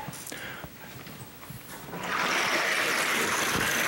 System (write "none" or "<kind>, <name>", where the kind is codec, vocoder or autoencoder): none